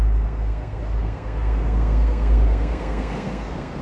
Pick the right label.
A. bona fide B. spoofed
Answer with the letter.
B